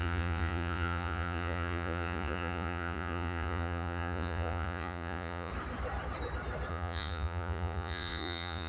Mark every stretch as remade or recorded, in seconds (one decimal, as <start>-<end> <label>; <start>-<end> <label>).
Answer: 0.0-5.5 remade; 5.5-6.7 recorded; 6.7-8.7 remade